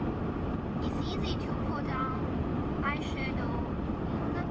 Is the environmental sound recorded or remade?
remade